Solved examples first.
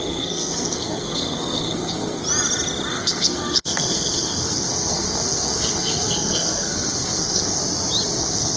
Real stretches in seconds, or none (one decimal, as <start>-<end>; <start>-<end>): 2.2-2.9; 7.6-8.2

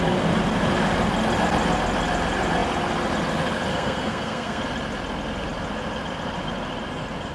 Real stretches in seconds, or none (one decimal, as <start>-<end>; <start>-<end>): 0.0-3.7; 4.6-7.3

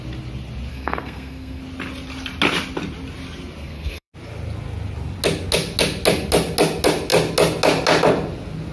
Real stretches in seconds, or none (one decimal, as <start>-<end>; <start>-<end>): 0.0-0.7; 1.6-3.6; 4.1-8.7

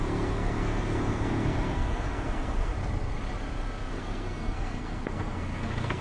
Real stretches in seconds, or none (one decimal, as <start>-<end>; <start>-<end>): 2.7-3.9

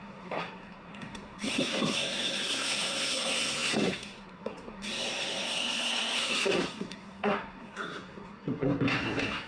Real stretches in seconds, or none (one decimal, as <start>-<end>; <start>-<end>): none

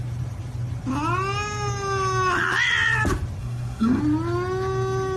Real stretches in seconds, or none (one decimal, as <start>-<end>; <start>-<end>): 0.0-3.4; 4.0-5.2

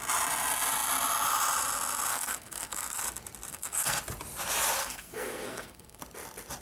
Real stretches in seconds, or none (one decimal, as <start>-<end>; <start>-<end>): 0.0-2.1; 3.0-3.5; 4.0-4.8; 6.0-6.6